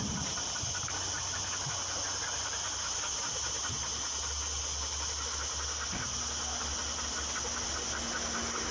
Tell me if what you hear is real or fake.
real